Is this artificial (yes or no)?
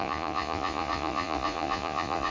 yes